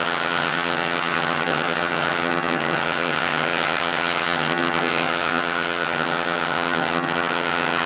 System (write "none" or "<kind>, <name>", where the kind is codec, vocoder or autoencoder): vocoder, HiFi-GAN